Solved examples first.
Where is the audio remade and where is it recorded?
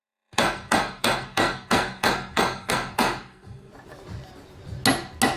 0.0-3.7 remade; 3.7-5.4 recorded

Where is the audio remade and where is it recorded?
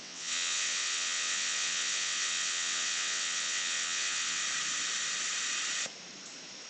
0.0-4.4 remade; 4.4-6.7 recorded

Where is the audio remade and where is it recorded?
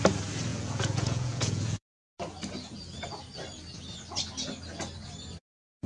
0.0-0.5 recorded; 0.5-2.0 remade; 2.0-5.9 recorded